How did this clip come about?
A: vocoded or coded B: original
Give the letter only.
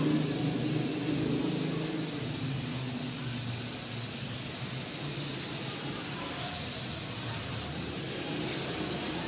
B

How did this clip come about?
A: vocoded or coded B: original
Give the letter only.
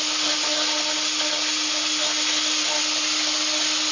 B